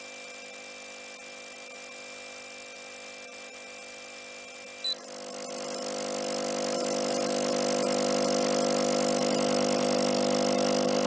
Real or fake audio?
real